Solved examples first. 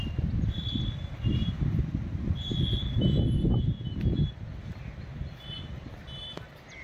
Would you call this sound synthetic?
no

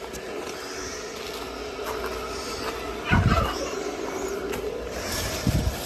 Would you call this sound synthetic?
no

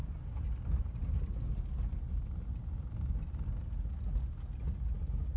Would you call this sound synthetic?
no